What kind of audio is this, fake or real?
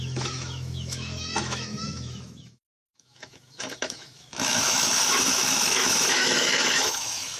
fake